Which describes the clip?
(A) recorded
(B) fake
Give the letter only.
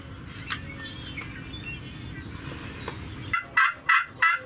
A